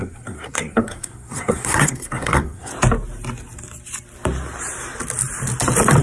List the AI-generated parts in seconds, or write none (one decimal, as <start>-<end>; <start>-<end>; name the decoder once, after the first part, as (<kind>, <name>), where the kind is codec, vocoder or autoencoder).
0.0-2.7 (codec, SNAC)